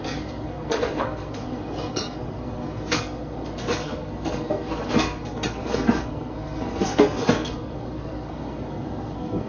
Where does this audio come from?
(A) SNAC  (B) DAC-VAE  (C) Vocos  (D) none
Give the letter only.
A